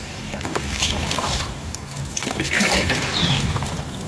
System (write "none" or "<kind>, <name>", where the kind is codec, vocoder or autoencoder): codec, DAC